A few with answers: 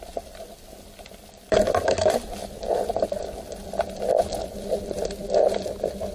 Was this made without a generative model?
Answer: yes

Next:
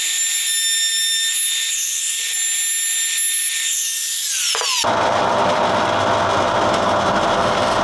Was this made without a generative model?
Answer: yes